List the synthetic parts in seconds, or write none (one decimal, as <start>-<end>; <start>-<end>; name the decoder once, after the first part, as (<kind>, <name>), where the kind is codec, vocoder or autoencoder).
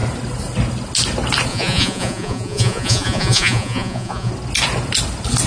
1.5-4.3 (vocoder, Vocos)